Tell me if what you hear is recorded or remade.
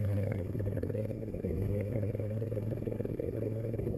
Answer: remade